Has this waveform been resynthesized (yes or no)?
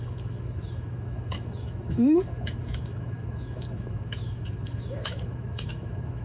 yes